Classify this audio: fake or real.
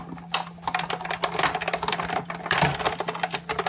real